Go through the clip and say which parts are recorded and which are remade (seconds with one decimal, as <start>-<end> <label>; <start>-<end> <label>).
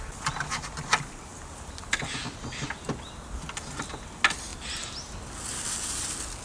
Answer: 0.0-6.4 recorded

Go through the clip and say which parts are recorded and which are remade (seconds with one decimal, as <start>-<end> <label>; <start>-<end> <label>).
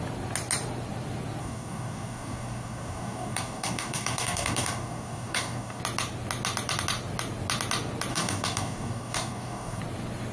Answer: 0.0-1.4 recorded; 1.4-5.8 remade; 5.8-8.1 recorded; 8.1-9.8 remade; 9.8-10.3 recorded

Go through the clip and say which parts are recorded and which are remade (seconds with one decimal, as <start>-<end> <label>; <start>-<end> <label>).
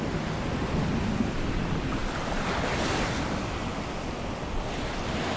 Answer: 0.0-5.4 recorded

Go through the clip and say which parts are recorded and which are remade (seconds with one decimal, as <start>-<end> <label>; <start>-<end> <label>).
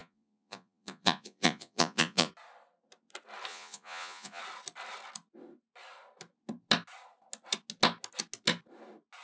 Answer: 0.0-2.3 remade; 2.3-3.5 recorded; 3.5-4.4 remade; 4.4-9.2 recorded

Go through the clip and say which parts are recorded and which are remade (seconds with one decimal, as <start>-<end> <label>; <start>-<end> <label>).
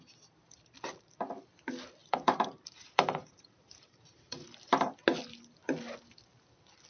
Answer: 0.0-2.0 recorded; 2.0-4.9 remade; 4.9-6.9 recorded